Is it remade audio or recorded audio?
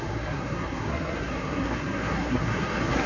remade